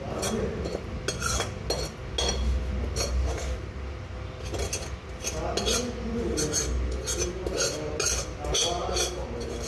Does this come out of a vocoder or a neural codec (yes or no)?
no